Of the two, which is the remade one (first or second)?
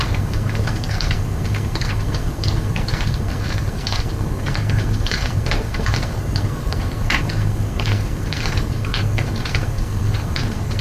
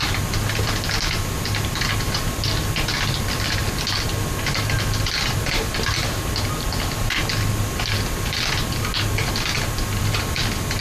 first